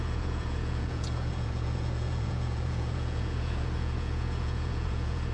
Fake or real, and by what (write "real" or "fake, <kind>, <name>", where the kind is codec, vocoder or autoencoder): fake, vocoder, Vocos